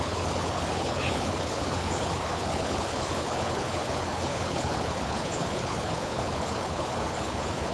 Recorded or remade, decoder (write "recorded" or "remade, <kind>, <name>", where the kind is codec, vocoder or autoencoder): remade, codec, HILCodec